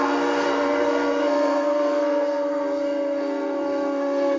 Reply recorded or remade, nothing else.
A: remade